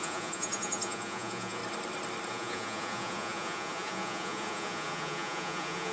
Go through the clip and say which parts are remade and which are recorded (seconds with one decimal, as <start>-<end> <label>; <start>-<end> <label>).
0.0-1.6 remade; 1.6-2.3 recorded; 2.3-5.9 remade